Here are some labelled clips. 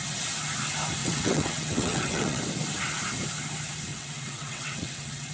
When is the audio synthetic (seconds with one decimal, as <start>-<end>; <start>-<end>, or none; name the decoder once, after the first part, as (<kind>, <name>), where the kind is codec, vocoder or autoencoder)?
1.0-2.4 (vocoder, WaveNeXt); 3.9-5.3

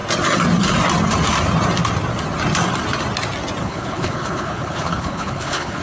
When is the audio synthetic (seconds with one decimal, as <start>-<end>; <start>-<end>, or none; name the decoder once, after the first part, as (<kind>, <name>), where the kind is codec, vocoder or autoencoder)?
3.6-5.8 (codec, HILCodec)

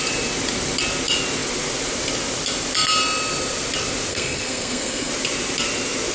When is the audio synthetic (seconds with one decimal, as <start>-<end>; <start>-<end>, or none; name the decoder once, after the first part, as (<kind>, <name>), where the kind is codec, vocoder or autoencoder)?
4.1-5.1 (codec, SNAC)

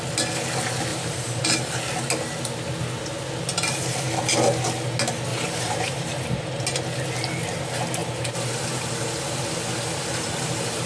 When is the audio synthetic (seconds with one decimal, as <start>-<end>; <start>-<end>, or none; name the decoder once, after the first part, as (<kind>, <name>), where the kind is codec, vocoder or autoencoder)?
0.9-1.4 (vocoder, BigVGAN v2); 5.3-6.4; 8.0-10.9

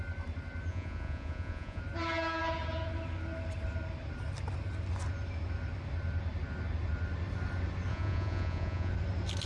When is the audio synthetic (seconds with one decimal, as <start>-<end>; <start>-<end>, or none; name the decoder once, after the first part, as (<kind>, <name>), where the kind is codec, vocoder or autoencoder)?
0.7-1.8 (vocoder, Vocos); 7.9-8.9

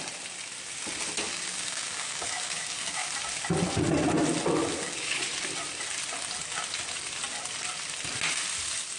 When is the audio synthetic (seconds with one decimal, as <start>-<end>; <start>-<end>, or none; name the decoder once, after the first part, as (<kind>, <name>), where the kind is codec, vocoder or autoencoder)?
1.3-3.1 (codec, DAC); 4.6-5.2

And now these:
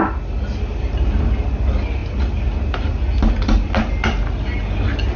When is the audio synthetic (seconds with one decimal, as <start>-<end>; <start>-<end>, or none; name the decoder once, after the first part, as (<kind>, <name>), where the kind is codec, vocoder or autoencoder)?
none